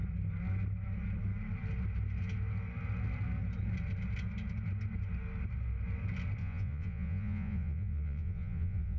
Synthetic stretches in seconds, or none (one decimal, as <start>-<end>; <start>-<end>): 6.4-9.0